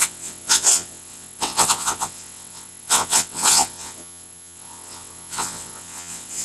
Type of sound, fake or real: fake